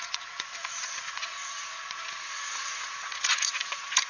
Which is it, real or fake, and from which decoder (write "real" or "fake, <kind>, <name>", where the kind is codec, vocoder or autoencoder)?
fake, vocoder, Vocos